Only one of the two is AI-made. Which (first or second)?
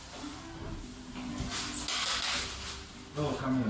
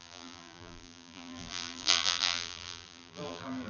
second